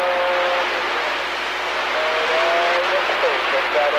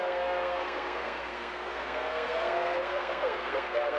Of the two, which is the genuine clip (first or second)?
first